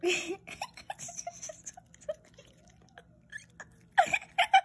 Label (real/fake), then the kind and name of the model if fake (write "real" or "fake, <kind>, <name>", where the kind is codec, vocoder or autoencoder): real